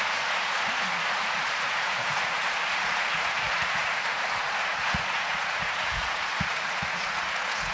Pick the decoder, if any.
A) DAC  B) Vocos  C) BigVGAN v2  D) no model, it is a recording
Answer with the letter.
B